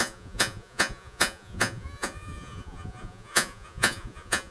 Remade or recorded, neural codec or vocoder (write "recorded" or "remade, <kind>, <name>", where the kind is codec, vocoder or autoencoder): remade, vocoder, Vocos